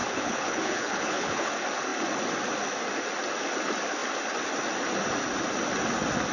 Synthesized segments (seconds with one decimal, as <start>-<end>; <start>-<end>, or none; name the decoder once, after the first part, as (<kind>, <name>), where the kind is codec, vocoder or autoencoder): 0.0-1.5 (codec, HILCodec)